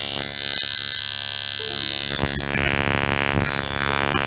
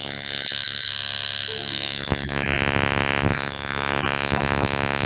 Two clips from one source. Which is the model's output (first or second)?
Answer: second